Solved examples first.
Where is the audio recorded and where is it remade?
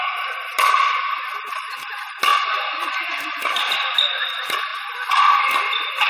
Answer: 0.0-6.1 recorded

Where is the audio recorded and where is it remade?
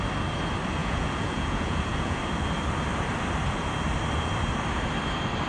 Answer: 0.0-0.8 recorded; 0.8-2.2 remade; 2.2-5.5 recorded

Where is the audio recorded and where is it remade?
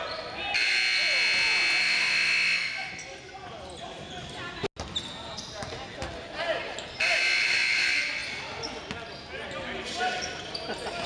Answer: 0.0-1.8 recorded; 1.8-2.9 remade; 2.9-11.1 recorded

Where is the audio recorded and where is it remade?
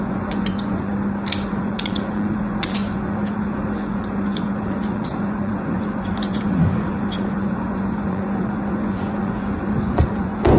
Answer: 0.0-0.9 remade; 0.9-1.5 recorded; 1.5-10.6 remade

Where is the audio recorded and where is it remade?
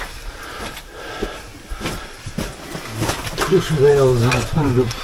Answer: 0.0-1.5 remade; 1.5-4.2 recorded; 4.2-5.0 remade